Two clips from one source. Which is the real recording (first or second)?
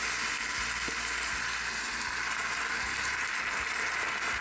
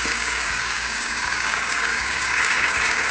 first